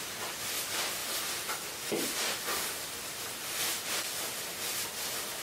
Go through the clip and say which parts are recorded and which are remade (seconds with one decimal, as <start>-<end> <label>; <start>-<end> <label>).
0.0-5.4 recorded